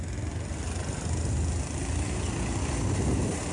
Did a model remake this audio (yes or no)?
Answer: no